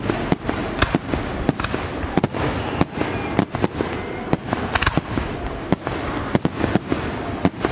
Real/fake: real